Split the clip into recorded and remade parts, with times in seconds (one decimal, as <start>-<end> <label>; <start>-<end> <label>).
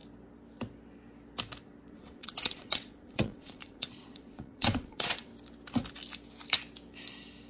0.0-1.9 recorded; 1.9-5.3 remade; 5.3-7.5 recorded